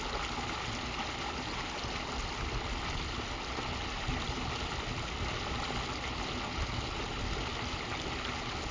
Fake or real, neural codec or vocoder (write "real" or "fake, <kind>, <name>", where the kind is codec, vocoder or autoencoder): real